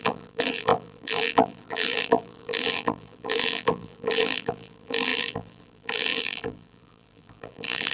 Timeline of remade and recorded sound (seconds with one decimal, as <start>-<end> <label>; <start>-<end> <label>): 0.0-7.9 remade